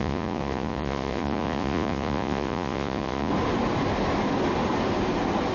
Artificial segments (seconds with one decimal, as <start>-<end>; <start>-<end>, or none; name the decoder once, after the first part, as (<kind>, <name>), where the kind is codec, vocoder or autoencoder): 0.0-3.3 (vocoder, Vocos)